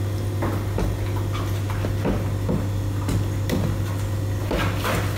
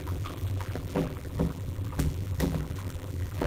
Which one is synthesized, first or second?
second